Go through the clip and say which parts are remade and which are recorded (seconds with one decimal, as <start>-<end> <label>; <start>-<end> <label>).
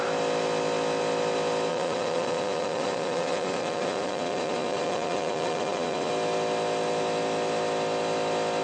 0.0-1.7 recorded; 1.7-6.1 remade; 6.1-8.6 recorded